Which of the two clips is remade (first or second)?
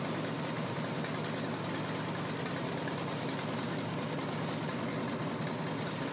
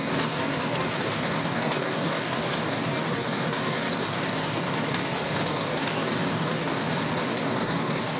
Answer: second